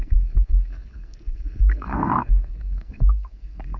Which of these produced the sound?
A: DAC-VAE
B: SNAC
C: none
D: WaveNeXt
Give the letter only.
B